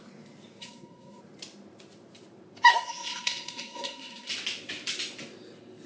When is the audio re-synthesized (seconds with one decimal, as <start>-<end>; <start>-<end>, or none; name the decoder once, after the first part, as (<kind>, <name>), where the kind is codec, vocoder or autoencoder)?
0.6-1.2 (codec, SNAC); 2.7-4.3